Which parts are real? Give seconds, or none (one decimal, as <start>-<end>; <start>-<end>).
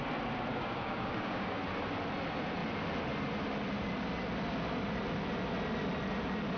0.0-0.5; 1.6-6.6